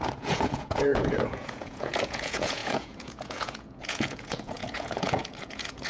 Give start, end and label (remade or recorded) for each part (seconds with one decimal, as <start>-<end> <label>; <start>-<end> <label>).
0.0-5.9 remade